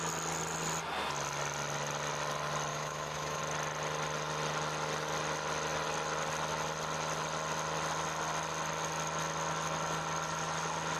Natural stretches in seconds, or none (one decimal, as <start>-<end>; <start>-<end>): 0.0-2.7; 3.4-11.0

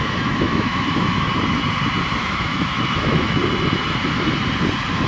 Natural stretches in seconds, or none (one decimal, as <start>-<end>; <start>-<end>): 1.3-2.2; 3.4-5.1

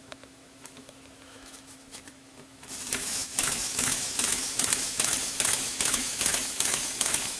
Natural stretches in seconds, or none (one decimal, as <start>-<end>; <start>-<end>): none